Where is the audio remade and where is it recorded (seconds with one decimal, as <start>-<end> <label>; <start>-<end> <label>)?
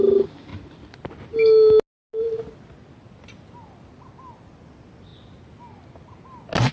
0.0-6.7 recorded